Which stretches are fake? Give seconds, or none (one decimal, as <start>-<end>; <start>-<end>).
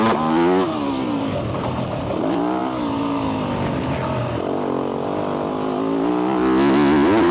none